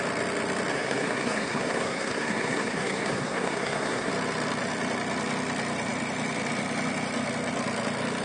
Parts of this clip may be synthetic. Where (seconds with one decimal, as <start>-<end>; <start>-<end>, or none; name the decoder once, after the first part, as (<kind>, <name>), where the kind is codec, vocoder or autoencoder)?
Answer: 0.7-4.1 (codec, SNAC)

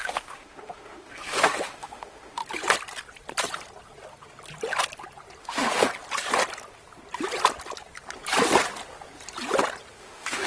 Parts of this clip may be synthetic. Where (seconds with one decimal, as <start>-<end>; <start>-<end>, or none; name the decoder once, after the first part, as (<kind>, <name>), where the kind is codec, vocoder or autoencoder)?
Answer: 0.0-2.4 (autoencoder, DAC-VAE); 5.4-5.9; 10.0-10.5

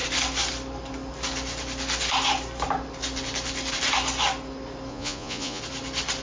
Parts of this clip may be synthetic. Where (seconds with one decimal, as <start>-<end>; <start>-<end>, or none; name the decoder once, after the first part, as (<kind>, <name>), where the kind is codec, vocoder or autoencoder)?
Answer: 4.9-5.6 (vocoder, Vocos)

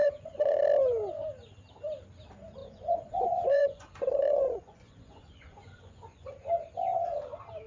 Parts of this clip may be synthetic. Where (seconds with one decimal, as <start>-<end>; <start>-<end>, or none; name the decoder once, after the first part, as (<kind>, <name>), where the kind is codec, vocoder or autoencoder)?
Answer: 0.0-0.6 (vocoder, Vocos); 2.6-6.3

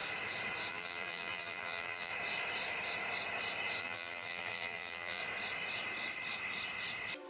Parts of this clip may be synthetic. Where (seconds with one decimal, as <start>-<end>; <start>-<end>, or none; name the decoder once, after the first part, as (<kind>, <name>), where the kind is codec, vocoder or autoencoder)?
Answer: 0.7-2.1 (vocoder, BigVGAN v2); 3.8-5.2